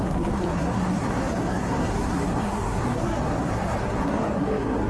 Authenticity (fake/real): fake